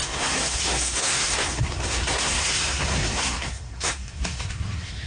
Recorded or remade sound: remade